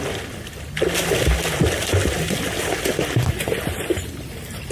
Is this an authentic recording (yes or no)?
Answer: yes